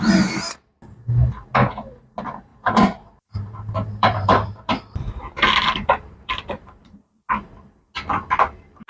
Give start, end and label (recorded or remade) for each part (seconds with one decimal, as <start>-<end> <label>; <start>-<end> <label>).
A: 0.0-2.5 recorded; 2.5-7.2 remade; 7.2-8.9 recorded